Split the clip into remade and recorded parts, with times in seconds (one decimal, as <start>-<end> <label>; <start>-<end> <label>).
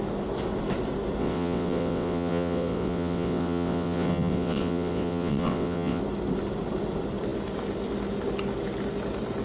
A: 0.0-1.2 recorded; 1.2-6.0 remade; 6.0-9.4 recorded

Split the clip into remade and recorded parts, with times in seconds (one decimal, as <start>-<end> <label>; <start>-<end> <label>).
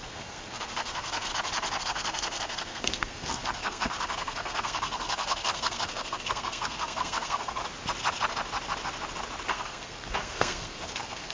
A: 0.0-1.3 remade; 1.3-1.8 recorded; 1.8-7.6 remade; 7.6-9.5 recorded; 9.5-11.3 remade